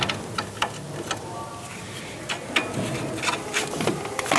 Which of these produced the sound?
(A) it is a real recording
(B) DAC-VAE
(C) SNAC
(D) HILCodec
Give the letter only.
A